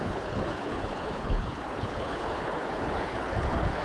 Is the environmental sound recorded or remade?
remade